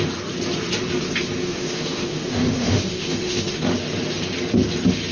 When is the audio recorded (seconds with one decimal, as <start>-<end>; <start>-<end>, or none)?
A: 0.0-1.4; 3.6-5.1